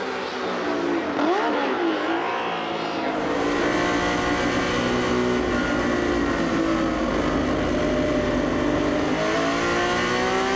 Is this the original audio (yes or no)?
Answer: yes